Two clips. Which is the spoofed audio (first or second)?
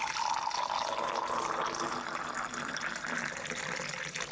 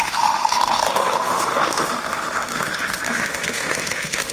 second